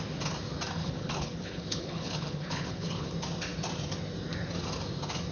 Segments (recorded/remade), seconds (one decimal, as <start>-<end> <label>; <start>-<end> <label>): 0.0-0.8 recorded; 0.8-3.1 remade; 3.1-5.3 recorded